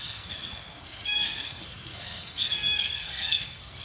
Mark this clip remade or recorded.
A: remade